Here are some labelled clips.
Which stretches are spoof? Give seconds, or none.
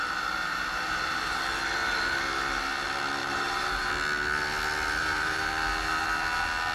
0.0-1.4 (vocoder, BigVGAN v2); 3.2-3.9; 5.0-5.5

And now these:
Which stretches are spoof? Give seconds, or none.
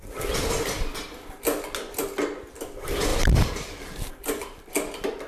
3.1-4.4 (vocoder, BigVGAN v2)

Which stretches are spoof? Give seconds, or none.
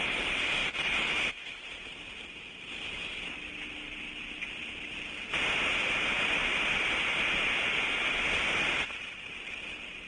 none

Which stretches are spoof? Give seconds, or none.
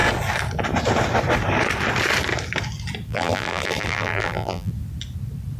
3.1-4.7 (vocoder, BigVGAN v2)